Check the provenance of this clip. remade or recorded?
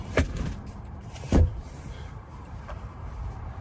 remade